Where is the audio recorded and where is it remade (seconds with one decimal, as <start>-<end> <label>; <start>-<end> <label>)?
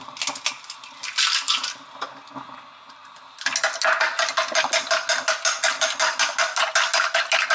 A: 0.0-7.5 recorded